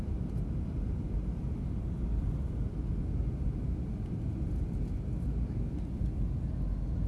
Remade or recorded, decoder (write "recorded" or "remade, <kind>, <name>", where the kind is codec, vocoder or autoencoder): recorded